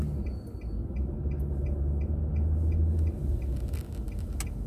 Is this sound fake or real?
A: real